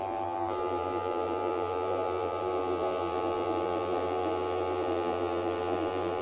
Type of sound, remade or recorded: remade